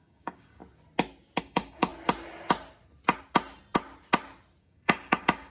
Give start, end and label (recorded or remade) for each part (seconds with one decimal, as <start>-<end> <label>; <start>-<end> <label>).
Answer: 0.0-0.6 remade; 0.6-1.4 recorded; 1.4-1.9 remade; 1.9-4.6 recorded; 4.6-5.5 remade